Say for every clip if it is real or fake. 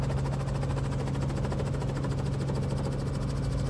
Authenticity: real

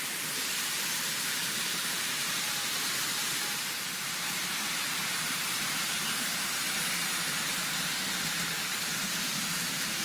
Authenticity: fake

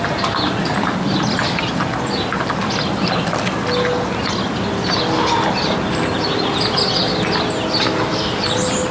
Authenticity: real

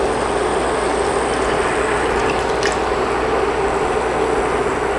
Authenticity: real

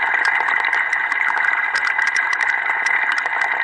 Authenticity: real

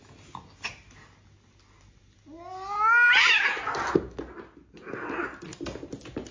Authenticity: real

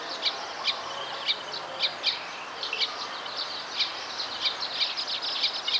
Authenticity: real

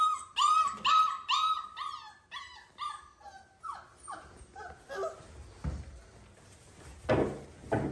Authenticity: real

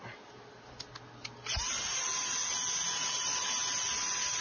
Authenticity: real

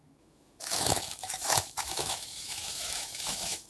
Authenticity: fake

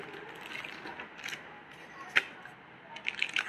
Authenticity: real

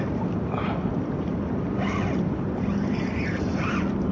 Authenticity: real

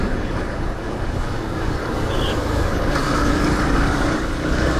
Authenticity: fake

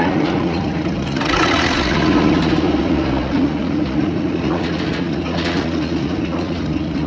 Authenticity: fake